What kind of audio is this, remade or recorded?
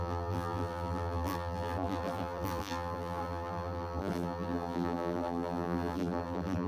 remade